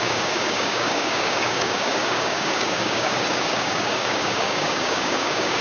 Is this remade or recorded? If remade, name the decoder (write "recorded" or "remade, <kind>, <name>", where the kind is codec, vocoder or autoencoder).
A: remade, codec, DAC